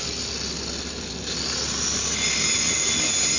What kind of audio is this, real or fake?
real